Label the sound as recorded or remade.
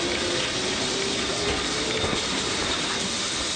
recorded